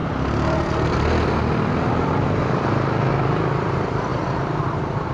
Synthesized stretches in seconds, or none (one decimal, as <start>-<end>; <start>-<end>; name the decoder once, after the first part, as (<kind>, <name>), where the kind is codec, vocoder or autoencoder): 1.9-5.1 (vocoder, BigVGAN v2)